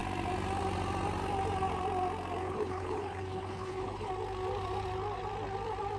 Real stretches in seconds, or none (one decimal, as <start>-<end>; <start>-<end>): 0.0-2.4; 4.1-6.0